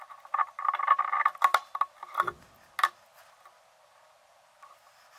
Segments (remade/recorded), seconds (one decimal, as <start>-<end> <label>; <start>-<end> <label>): 0.0-5.2 recorded